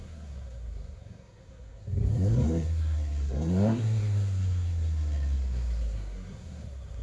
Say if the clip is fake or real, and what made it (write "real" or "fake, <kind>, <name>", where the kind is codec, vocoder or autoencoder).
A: fake, codec, SNAC